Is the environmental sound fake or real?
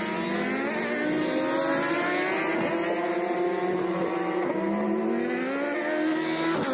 real